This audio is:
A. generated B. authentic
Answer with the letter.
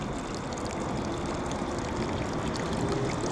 B